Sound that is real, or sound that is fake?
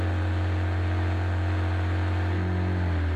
real